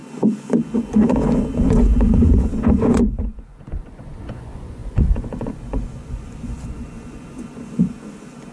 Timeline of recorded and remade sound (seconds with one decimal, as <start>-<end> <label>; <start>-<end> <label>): 0.0-8.5 remade